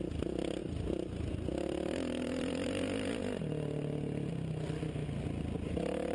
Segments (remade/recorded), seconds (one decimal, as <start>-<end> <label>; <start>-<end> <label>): 0.0-6.1 recorded